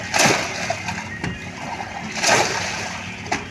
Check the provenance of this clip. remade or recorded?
recorded